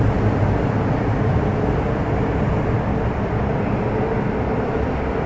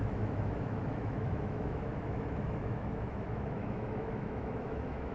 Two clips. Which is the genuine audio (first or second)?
first